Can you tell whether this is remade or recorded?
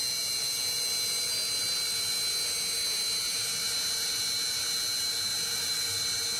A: recorded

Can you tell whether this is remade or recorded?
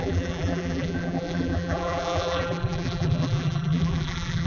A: remade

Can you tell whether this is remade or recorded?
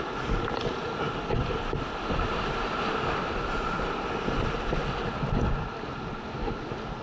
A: recorded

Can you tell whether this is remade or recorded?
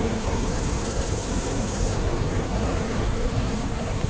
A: remade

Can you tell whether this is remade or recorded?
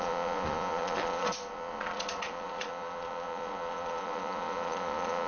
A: remade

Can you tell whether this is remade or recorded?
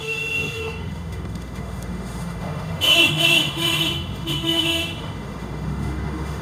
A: remade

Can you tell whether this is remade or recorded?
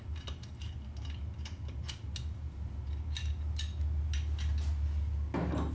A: recorded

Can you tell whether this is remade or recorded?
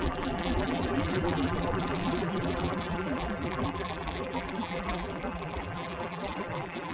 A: remade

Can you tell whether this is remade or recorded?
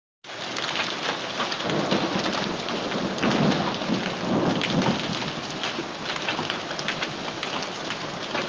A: recorded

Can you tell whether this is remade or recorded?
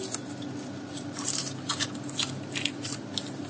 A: recorded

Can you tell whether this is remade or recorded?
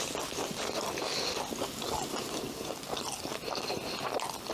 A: recorded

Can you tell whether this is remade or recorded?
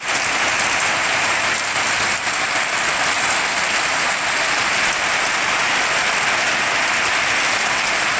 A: recorded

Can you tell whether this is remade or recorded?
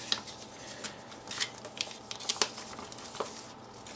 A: recorded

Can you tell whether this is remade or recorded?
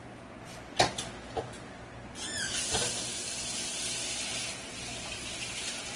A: recorded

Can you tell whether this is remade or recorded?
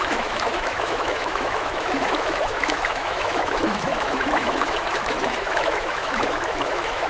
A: remade